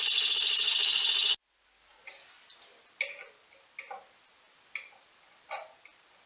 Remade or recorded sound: recorded